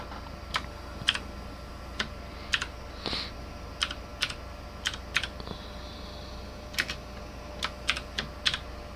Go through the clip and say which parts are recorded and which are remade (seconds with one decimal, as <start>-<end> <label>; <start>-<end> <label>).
0.0-9.0 recorded